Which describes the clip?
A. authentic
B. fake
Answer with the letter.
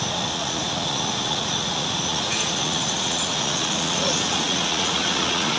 B